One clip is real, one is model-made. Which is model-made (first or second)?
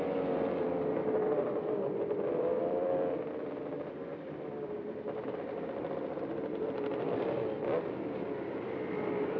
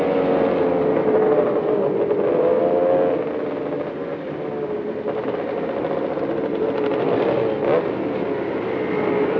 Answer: first